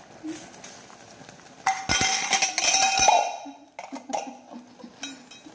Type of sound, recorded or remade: recorded